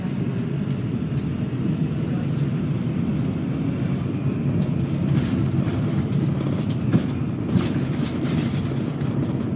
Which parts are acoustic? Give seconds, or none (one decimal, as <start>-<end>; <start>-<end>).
3.1-4.3; 6.9-7.4